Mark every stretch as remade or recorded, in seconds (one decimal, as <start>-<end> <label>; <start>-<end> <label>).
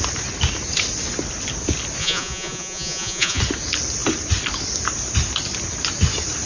0.0-2.0 recorded; 2.0-3.4 remade; 3.4-6.5 recorded